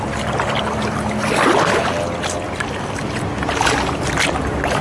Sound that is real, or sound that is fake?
real